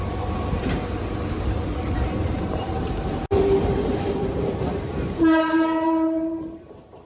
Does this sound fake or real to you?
fake